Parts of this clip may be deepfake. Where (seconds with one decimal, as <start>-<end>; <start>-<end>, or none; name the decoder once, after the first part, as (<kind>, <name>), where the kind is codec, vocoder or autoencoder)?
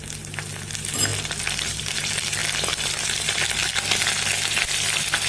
1.1-1.9 (vocoder, BigVGAN v2); 2.4-3.0